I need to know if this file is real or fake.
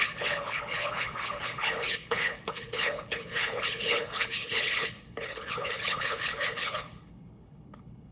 fake